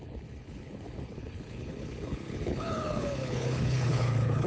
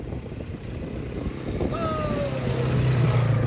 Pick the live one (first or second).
second